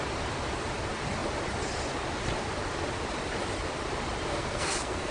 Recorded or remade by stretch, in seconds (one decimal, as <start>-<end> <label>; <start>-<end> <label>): 0.0-4.3 recorded; 4.3-5.1 remade